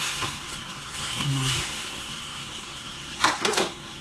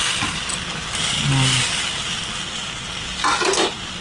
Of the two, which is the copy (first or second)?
first